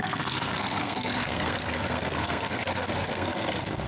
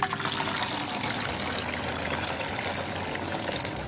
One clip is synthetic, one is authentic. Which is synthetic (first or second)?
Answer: first